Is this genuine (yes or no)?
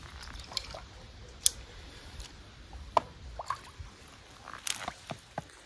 yes